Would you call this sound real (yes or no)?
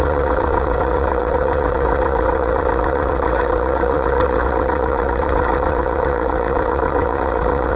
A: no